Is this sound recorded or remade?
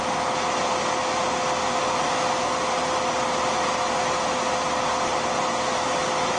recorded